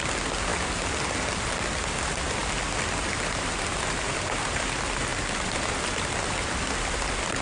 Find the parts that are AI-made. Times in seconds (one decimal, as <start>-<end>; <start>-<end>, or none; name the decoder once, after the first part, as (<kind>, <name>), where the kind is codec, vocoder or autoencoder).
none